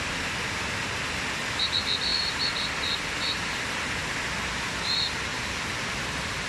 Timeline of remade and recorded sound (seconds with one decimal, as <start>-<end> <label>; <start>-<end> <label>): 0.0-2.1 remade; 2.1-3.3 recorded; 3.3-4.0 remade; 4.0-4.5 recorded; 4.5-6.5 remade